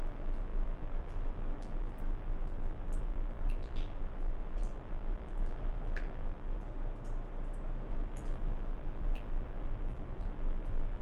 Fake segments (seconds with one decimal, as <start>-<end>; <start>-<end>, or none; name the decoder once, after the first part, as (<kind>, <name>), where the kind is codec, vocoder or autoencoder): 0.0-6.7 (vocoder, BigVGAN v2); 7.9-11.0